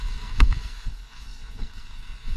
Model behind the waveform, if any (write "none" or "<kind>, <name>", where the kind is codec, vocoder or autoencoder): codec, SNAC